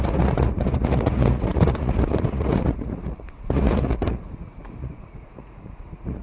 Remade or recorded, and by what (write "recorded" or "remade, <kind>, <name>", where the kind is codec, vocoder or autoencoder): remade, vocoder, Vocos